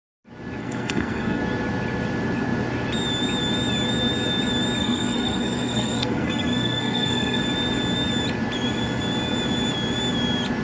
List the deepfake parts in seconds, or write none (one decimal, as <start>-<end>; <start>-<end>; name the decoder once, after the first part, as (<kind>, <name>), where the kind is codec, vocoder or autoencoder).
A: 0.6-1.4 (codec, SNAC); 4.8-7.4